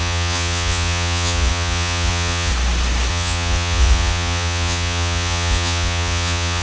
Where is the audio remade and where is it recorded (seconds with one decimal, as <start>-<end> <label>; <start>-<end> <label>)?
0.0-2.5 remade; 2.5-3.1 recorded; 3.1-6.6 remade